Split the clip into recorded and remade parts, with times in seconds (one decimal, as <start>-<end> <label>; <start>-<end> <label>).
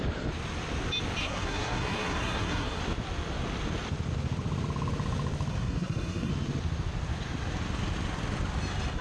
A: 0.0-1.2 recorded; 1.2-2.8 remade; 2.8-5.5 recorded; 5.5-6.3 remade; 6.3-9.0 recorded